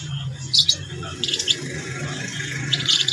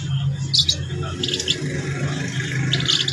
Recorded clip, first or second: second